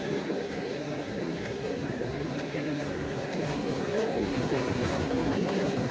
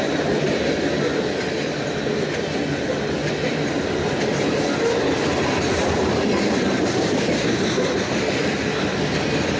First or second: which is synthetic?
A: first